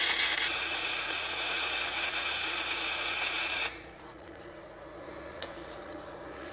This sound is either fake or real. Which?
fake